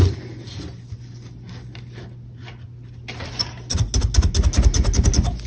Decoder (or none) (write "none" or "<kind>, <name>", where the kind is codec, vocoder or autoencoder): none